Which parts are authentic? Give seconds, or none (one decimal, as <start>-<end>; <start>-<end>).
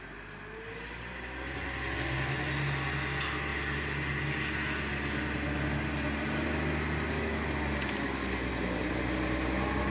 0.0-9.9